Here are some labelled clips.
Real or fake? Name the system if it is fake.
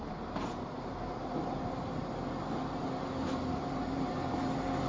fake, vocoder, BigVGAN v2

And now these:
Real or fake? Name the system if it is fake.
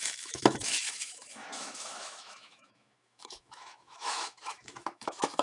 fake, autoencoder, DAC-VAE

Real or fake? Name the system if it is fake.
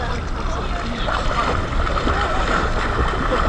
real